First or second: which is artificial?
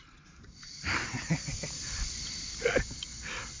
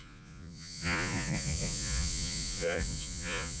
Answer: second